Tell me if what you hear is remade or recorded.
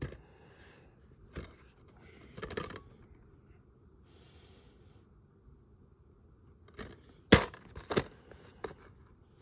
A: recorded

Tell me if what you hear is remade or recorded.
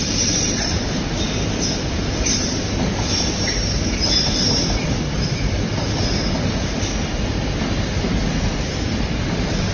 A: recorded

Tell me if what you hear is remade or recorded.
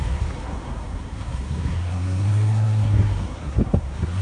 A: remade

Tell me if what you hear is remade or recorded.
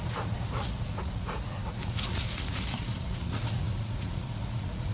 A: remade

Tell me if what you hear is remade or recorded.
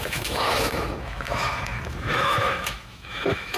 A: remade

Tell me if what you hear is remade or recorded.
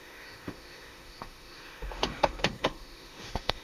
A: remade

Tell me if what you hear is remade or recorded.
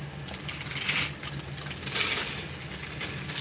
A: recorded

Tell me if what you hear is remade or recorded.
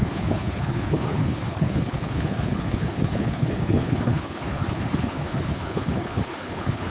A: remade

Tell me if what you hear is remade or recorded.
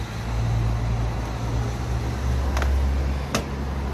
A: recorded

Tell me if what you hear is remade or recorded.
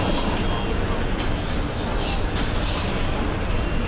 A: recorded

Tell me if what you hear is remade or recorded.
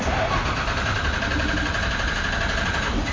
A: recorded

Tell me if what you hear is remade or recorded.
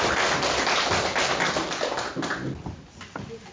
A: recorded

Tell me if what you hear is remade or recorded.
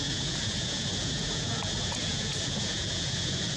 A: remade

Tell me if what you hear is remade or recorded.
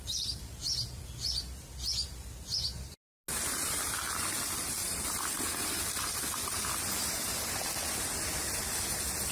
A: recorded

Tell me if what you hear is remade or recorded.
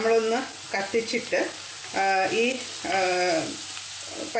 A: recorded